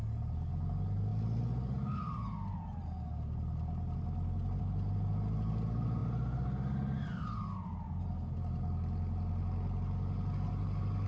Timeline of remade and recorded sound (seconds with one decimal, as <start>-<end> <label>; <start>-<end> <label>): 0.0-11.1 recorded